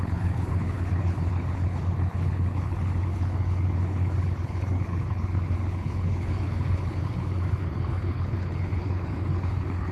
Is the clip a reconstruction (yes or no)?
yes